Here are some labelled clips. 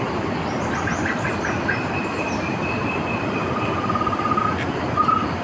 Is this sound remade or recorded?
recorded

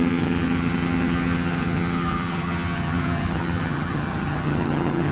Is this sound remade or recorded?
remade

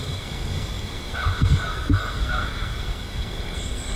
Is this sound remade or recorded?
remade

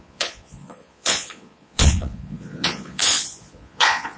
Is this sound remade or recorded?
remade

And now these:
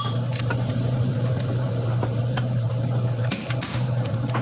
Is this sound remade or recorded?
remade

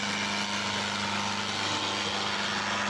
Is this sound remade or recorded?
recorded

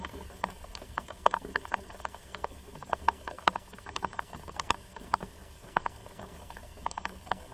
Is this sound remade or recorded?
remade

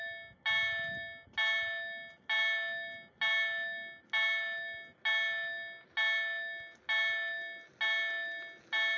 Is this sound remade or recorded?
recorded